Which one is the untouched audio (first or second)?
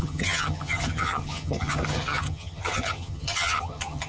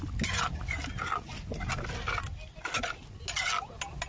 second